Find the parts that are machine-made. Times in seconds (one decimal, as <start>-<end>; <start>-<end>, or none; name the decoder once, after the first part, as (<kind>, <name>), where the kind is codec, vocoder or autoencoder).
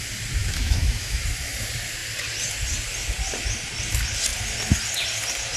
0.4-1.2 (autoencoder, DAC-VAE)